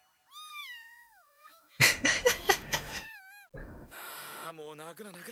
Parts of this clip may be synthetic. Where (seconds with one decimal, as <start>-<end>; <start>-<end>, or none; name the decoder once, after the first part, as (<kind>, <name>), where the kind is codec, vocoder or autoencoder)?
0.5-3.2 (autoencoder, DAC-VAE); 3.6-4.5